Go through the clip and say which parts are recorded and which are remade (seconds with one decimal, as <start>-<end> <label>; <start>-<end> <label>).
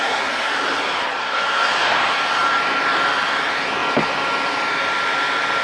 0.0-0.5 remade; 0.5-1.2 recorded; 1.2-1.7 remade; 1.7-5.6 recorded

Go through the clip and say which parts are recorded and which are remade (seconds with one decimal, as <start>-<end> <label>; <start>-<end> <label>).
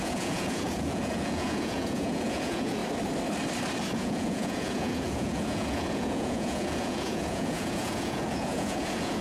0.0-2.8 remade; 2.8-3.9 recorded; 3.9-9.2 remade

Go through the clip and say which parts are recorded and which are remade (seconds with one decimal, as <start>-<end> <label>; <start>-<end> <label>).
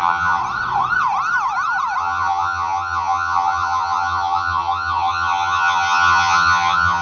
0.0-0.4 remade; 0.4-2.0 recorded; 2.0-7.0 remade